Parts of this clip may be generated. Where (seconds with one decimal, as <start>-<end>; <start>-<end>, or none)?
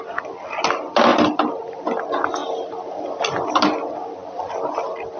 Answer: none